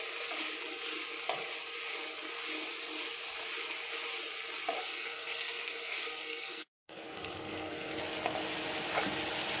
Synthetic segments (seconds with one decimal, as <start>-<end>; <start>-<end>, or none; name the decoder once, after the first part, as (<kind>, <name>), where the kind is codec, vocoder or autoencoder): 4.8-8.0 (codec, SNAC)